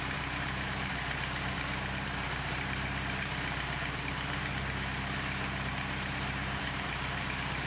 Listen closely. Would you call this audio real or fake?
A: fake